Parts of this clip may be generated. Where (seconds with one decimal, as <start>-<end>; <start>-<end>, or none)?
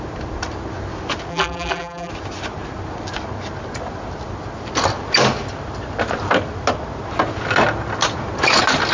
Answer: 1.3-2.1